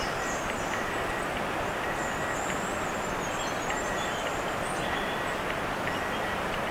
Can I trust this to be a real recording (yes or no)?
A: yes